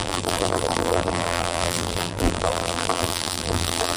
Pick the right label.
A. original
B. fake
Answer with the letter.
B